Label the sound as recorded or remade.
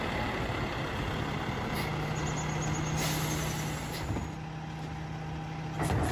recorded